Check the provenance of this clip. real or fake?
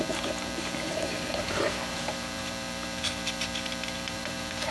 fake